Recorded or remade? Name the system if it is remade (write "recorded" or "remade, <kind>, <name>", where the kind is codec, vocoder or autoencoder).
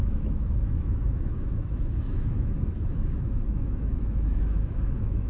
remade, autoencoder, DAC-VAE